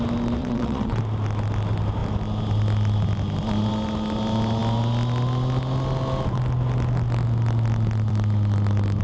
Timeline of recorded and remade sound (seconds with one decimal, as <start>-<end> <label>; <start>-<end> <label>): 0.0-0.4 recorded; 0.4-1.0 remade; 1.0-9.0 recorded